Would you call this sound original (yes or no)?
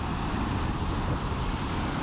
yes